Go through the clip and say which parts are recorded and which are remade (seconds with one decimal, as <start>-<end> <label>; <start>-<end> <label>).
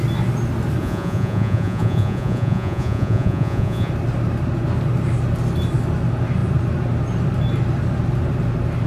0.0-0.8 recorded; 0.8-3.9 remade; 3.9-8.9 recorded